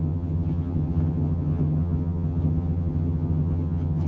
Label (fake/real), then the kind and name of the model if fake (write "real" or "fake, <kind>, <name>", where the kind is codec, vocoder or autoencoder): fake, vocoder, HiFi-GAN